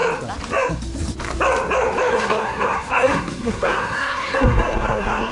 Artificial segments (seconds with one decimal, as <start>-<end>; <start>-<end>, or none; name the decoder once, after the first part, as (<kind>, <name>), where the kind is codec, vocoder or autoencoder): 2.1-5.3 (codec, SNAC)